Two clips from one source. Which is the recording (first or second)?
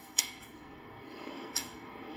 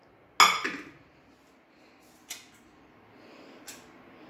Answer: second